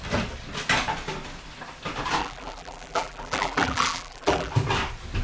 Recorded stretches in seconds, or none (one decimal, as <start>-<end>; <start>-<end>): 0.0-2.2; 4.5-5.2